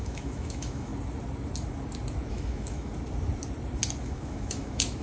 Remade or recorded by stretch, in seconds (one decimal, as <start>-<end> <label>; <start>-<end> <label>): 0.0-0.9 remade; 0.9-2.3 recorded; 2.3-2.9 remade; 2.9-4.0 recorded; 4.0-5.0 remade

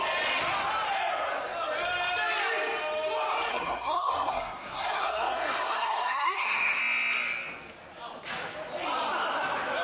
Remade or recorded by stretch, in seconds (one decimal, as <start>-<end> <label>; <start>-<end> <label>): 0.0-3.5 recorded; 3.5-6.8 remade; 6.8-9.8 recorded